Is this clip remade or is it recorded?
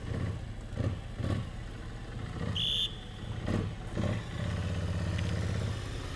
recorded